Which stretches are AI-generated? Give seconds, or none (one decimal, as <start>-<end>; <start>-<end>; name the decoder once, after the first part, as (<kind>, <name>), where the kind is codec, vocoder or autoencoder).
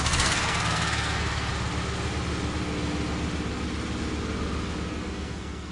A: 0.0-1.5 (codec, SNAC); 4.9-5.7